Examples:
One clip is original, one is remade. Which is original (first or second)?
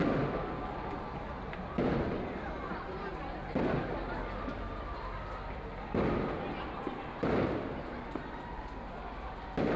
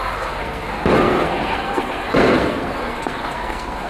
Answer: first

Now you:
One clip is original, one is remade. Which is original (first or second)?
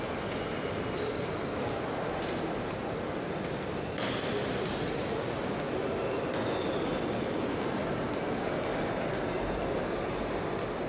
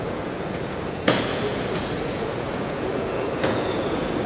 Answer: first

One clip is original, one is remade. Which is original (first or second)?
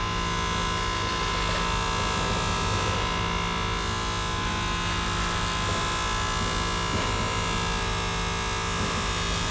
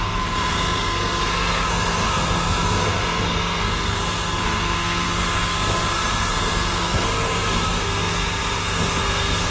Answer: first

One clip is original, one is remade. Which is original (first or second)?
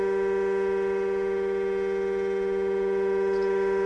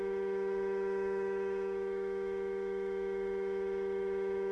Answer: first